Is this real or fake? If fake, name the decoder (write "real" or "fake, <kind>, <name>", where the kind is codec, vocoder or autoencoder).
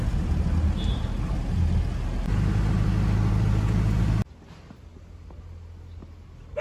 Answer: real